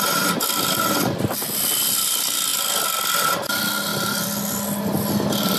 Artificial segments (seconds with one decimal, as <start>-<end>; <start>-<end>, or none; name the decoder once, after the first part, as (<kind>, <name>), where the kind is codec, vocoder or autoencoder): none